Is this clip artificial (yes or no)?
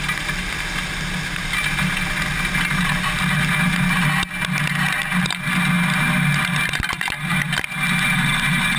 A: no